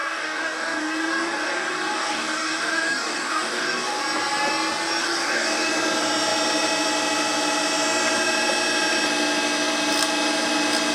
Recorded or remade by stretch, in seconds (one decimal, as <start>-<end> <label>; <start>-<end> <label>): 0.0-4.0 remade; 4.0-5.0 recorded; 5.0-5.7 remade; 5.7-10.9 recorded